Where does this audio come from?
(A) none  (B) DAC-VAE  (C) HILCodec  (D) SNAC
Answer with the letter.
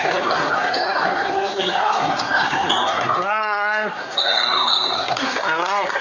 D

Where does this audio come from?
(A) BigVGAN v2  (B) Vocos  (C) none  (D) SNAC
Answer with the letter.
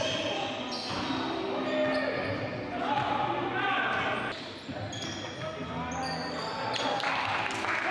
C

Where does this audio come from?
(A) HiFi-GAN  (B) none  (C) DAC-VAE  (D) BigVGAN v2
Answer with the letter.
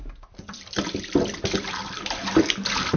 B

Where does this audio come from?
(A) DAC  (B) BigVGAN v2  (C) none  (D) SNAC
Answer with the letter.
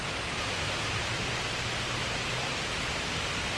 C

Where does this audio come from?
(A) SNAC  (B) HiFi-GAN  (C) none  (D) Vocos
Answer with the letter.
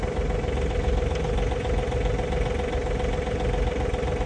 C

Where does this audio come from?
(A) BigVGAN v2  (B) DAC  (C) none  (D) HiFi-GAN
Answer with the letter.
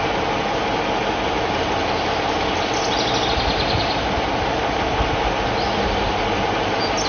C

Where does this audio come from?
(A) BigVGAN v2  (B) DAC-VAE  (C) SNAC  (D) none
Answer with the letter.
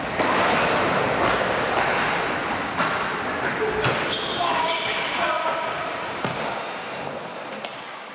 D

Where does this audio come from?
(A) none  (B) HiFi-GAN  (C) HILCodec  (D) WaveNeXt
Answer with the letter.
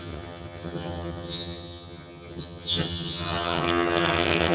B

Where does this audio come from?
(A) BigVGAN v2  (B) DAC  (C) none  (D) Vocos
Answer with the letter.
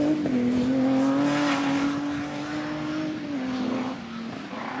C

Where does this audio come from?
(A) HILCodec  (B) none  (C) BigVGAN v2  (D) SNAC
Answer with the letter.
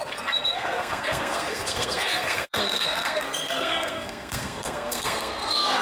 D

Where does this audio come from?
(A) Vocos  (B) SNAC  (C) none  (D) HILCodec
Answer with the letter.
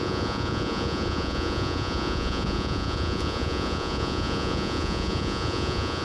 A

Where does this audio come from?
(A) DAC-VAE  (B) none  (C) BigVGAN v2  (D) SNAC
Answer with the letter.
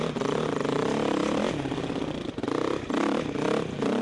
B